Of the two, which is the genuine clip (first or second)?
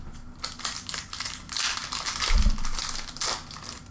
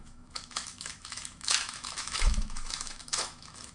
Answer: first